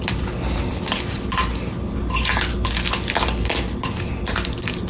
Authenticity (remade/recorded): recorded